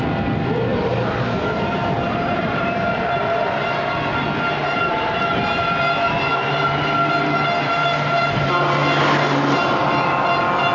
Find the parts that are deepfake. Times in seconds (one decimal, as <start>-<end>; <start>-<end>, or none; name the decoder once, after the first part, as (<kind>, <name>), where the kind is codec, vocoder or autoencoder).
0.7-3.5 (vocoder, BigVGAN v2); 4.6-5.2; 6.3-7.2; 7.8-8.5